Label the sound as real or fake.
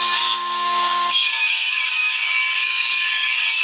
fake